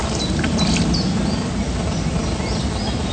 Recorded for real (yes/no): yes